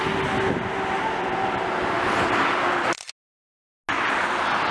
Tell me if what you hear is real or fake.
real